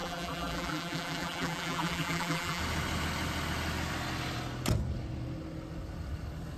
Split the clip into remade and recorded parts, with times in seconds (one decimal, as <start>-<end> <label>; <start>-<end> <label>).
0.0-2.6 remade; 2.6-6.6 recorded

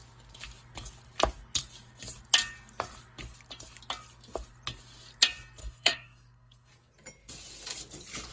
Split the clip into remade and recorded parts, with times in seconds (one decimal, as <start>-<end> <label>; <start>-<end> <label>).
0.0-5.6 recorded; 5.6-6.7 remade; 6.7-8.3 recorded

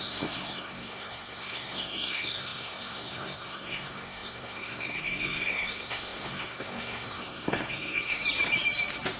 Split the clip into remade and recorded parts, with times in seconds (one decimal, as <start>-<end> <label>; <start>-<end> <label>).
0.0-8.2 remade; 8.2-9.2 recorded

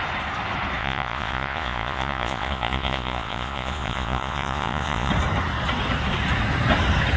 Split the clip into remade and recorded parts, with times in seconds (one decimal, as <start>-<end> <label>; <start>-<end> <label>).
0.0-0.8 recorded; 0.8-5.1 remade; 5.1-7.2 recorded

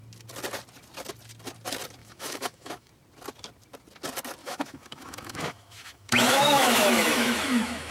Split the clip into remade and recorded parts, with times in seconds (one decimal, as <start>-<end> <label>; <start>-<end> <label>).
0.0-2.0 recorded; 2.0-2.9 remade; 2.9-4.4 recorded; 4.4-7.9 remade